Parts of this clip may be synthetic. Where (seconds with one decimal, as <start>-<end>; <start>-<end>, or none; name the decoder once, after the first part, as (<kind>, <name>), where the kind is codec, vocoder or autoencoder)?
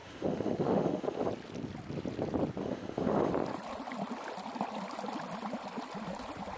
0.0-1.3 (autoencoder, DAC-VAE); 2.6-3.3